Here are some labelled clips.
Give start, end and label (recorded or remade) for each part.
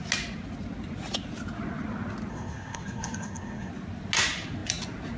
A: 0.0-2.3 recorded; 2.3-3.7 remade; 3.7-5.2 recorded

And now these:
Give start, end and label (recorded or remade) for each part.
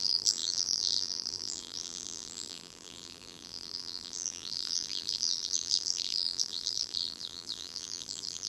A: 0.0-8.5 remade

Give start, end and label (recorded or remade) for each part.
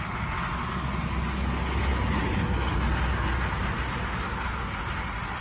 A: 0.0-5.4 recorded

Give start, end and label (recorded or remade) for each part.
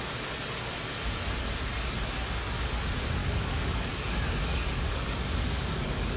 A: 0.0-3.2 recorded; 3.2-3.9 remade; 3.9-4.5 recorded; 4.5-6.2 remade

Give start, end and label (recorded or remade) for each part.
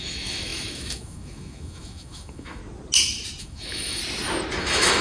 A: 0.0-2.6 remade; 2.6-3.4 recorded; 3.4-4.0 remade; 4.0-4.6 recorded; 4.6-5.0 remade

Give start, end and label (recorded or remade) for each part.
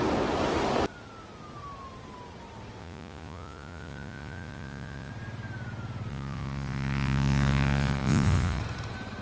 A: 0.0-2.8 recorded; 2.8-5.1 remade; 5.1-6.1 recorded; 6.1-8.6 remade; 8.6-9.2 recorded